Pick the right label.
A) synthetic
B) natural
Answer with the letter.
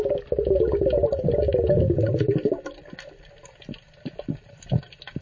B